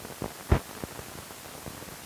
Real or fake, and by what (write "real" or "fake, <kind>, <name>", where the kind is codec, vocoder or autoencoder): real